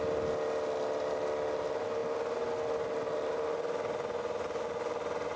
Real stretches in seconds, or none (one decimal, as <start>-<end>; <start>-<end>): 0.0-5.4